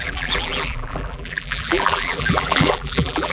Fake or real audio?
fake